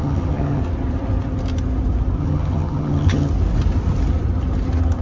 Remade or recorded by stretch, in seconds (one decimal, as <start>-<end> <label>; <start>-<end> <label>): 0.0-0.6 remade; 0.6-2.2 recorded; 2.2-3.3 remade; 3.3-5.0 recorded